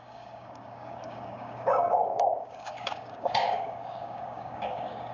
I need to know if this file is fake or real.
fake